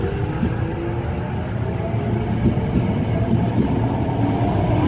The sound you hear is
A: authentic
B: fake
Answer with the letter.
A